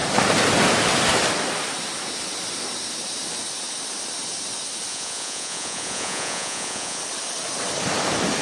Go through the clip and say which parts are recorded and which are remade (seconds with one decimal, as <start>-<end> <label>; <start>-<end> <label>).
0.0-4.9 recorded; 4.9-7.0 remade; 7.0-8.4 recorded